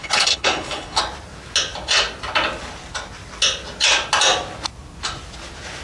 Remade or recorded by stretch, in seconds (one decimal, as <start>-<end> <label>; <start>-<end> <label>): 0.0-1.0 remade; 1.0-5.8 recorded